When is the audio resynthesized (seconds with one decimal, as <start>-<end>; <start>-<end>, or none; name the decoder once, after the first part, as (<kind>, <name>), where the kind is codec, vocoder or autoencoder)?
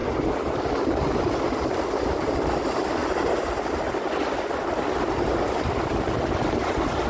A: none